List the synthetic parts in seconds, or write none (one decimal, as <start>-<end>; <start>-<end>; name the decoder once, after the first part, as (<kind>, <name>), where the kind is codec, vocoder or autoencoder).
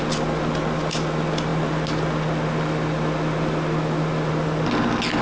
none